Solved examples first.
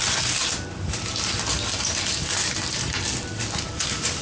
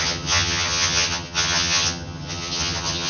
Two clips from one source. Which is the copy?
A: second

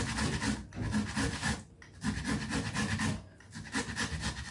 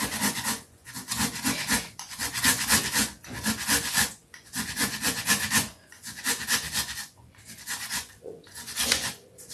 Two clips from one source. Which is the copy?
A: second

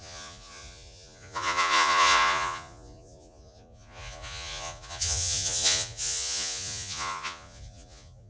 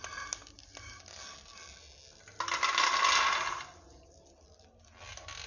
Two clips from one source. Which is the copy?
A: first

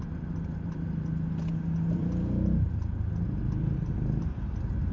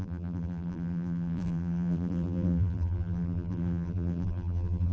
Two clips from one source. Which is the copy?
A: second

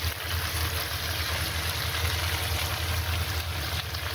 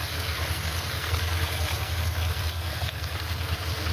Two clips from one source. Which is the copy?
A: second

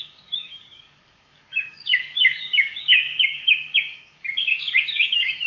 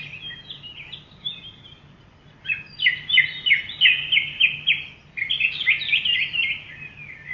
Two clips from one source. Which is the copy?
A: first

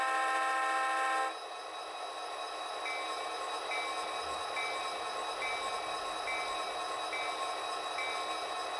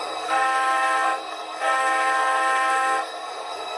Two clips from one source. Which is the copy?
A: second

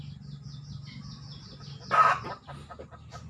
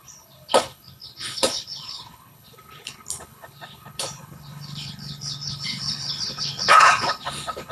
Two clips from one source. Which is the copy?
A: second